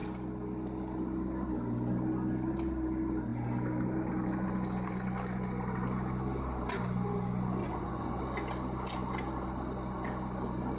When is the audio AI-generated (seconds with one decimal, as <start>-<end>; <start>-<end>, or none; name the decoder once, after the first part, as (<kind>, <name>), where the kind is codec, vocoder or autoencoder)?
7.6-8.2 (vocoder, Vocos)